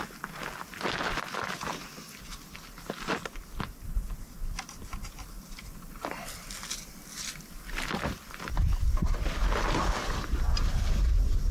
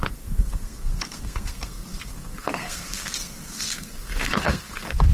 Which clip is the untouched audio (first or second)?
first